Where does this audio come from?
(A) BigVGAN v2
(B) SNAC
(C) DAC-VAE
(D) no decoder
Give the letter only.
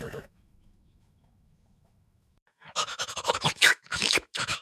C